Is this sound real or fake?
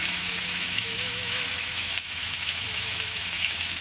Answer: fake